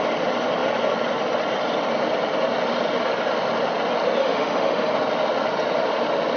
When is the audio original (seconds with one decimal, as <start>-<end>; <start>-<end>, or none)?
0.0-4.2; 4.9-6.4